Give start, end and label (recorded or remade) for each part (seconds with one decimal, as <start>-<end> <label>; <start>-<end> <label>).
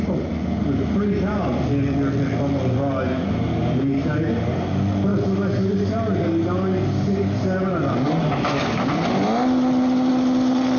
0.0-10.8 recorded